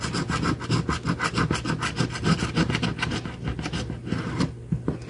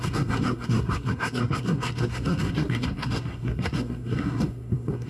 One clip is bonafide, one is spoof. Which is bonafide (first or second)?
first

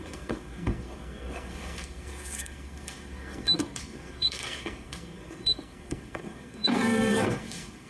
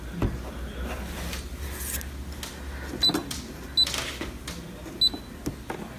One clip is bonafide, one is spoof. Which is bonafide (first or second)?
second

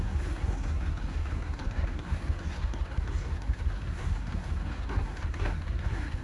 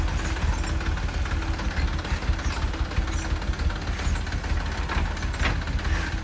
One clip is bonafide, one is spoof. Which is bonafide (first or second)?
second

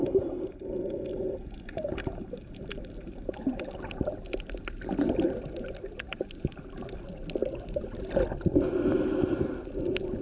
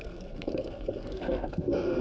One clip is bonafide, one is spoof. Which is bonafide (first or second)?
first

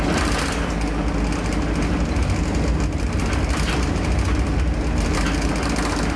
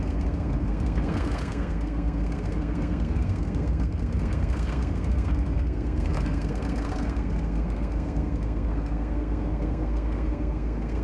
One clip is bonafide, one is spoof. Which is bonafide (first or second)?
first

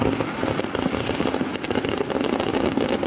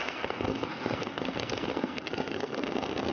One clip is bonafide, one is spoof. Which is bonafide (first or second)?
first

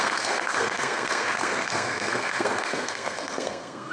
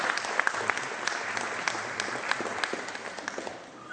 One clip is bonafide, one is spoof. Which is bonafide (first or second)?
second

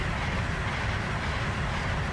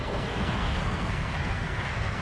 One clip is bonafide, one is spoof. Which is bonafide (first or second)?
first